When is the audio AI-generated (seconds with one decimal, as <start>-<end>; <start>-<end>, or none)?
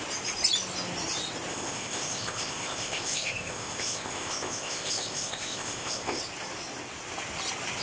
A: 1.5-6.2